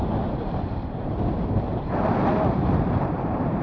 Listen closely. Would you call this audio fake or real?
fake